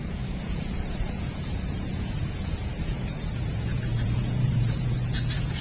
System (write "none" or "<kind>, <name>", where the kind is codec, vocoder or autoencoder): vocoder, Vocos